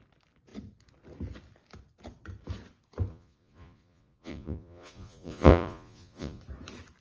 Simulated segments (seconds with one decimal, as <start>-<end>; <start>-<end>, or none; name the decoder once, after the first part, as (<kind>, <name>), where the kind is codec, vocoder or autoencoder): 3.1-6.4 (vocoder, Vocos)